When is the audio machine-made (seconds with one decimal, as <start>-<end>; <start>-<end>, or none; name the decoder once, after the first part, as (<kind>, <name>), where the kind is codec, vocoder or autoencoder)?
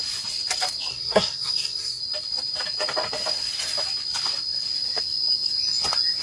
0.9-2.0 (codec, SNAC)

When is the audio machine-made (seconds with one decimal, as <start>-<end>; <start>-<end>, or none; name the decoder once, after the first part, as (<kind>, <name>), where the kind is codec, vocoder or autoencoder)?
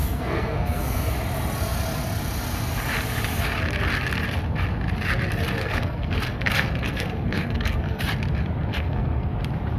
0.0-1.1 (codec, SNAC); 5.6-8.0; 8.7-9.3